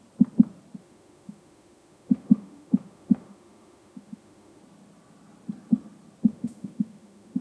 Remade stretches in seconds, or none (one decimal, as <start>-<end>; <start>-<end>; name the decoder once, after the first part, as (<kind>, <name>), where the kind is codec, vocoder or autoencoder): 0.8-4.6 (autoencoder, DAC-VAE); 6.3-7.4